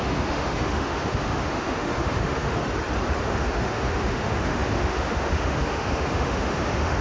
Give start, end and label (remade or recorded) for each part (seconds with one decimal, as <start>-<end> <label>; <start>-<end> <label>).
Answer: 0.0-2.6 remade; 2.6-3.2 recorded; 3.2-7.0 remade